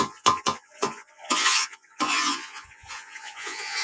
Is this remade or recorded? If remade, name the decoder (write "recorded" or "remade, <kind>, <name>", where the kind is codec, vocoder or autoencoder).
remade, vocoder, Vocos